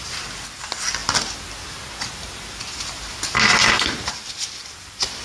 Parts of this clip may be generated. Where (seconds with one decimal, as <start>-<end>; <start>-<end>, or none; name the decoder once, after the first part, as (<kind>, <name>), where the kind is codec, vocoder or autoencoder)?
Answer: none